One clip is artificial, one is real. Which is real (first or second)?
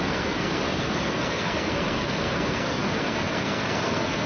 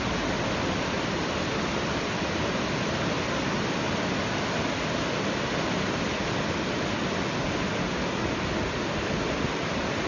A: second